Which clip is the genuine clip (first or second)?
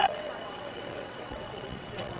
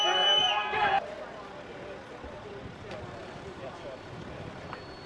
second